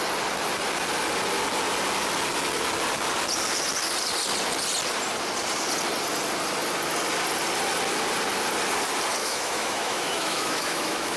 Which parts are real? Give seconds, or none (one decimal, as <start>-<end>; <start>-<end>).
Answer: 0.0-9.2